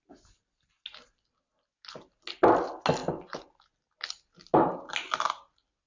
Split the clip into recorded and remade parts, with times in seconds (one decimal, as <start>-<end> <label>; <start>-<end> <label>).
0.0-5.9 recorded